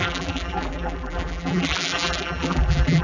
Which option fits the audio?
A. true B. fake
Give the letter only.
B